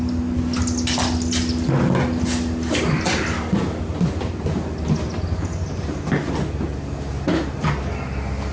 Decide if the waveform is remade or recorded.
recorded